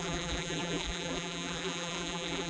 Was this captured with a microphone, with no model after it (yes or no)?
no